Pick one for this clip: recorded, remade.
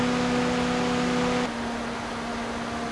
recorded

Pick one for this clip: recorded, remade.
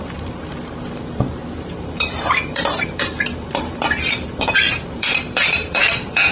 remade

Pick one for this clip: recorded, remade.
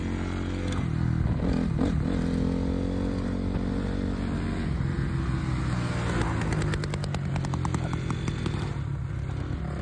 recorded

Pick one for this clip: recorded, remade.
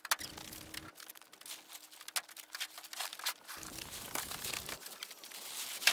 recorded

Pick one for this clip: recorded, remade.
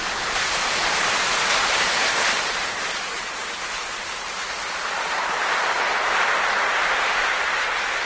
remade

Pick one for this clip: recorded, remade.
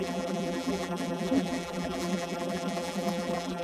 remade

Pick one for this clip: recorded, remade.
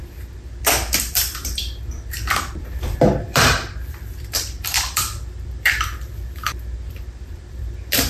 remade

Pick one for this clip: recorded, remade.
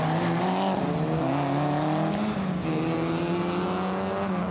recorded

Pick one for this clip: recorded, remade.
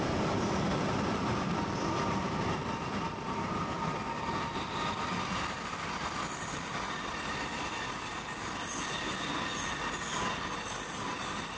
remade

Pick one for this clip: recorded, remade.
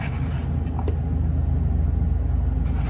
recorded